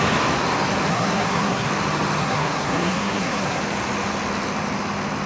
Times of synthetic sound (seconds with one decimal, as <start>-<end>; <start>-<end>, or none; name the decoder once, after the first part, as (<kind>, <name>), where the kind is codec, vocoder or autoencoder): 0.9-1.7 (codec, SNAC); 2.2-3.6